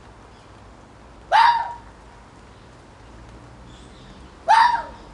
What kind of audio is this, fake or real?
real